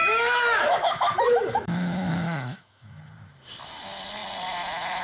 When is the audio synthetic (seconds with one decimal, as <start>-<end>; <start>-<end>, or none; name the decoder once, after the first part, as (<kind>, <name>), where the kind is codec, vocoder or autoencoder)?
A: 0.0-3.0 (autoencoder, DAC-VAE)